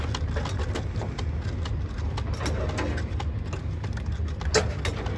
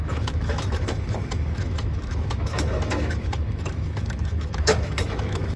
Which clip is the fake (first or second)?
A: second